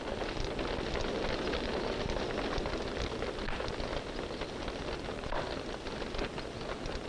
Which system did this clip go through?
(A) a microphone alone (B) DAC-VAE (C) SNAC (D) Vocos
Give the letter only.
A